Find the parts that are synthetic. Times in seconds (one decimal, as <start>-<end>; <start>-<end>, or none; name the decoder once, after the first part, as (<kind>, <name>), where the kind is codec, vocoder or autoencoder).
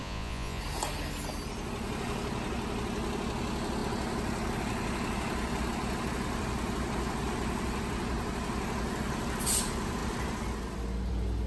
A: 0.0-0.6 (vocoder, Vocos)